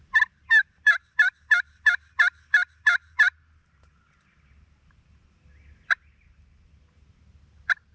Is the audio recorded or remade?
recorded